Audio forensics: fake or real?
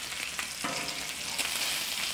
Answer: real